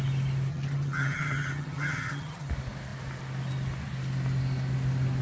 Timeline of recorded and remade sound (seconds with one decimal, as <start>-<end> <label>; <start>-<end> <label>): 0.0-0.5 recorded; 0.5-2.5 remade; 2.5-5.2 recorded